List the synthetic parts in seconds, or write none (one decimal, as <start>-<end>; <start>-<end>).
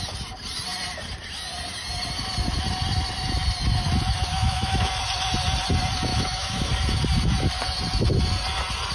4.3-4.9; 6.1-6.7